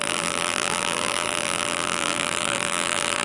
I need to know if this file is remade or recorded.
remade